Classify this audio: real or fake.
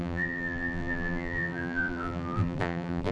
fake